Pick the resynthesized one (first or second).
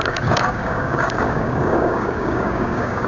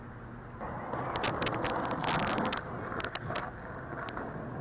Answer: first